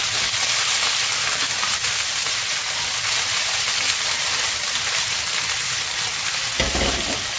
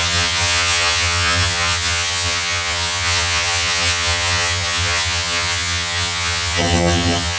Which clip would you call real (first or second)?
first